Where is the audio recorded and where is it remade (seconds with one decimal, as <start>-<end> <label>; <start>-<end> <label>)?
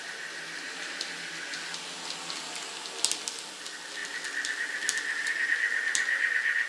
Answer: 0.0-6.7 recorded